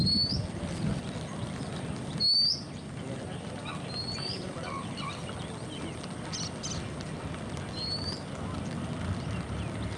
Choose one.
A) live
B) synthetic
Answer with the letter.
A